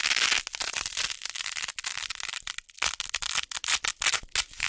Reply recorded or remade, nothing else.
recorded